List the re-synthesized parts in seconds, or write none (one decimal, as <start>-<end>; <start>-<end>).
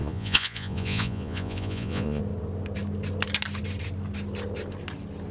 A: 0.0-2.2